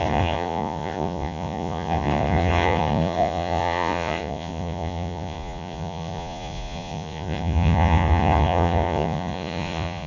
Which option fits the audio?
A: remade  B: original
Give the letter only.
A